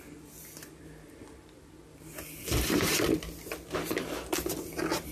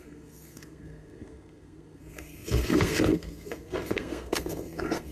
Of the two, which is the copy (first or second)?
second